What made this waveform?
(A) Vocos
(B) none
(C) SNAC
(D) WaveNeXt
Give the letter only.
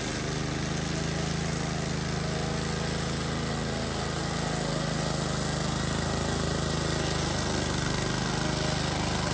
B